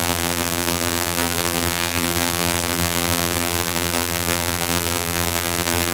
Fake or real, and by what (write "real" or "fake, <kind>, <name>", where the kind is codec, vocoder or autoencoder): fake, vocoder, BigVGAN v2